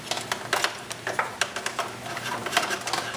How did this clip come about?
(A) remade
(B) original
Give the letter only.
B